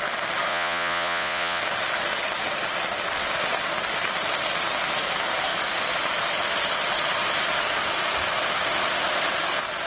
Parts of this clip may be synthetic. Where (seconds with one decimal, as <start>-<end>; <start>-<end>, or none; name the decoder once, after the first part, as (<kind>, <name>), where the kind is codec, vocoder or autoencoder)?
0.5-1.6 (vocoder, Vocos)